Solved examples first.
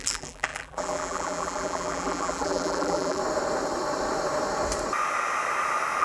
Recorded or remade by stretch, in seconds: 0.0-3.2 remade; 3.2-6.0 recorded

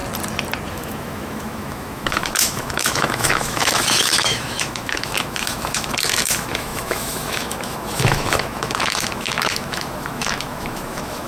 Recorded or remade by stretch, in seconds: 0.0-0.7 recorded; 0.7-11.3 remade

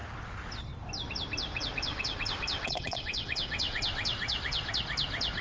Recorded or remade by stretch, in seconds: 0.0-1.5 recorded; 1.5-4.7 remade; 4.7-5.4 recorded

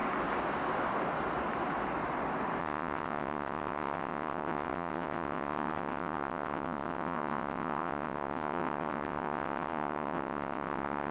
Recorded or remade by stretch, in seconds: 0.0-2.6 recorded; 2.6-11.1 remade